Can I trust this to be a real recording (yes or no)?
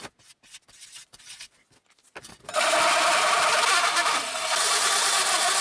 yes